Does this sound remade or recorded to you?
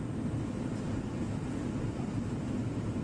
recorded